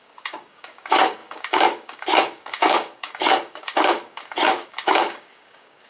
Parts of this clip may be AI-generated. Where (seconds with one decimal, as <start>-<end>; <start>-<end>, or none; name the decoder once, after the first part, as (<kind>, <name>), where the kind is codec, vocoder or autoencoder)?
0.0-5.9 (codec, DAC)